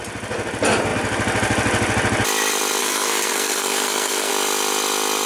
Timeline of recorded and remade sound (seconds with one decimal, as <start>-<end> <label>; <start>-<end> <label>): 0.0-2.8 recorded; 2.8-4.3 remade; 4.3-5.3 recorded